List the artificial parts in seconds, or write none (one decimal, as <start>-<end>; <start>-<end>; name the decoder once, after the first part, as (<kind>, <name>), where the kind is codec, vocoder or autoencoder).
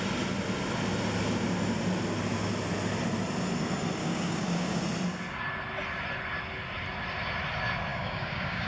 4.0-4.8 (codec, DAC); 7.9-8.7